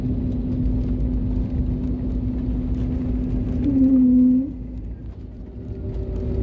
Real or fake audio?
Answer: real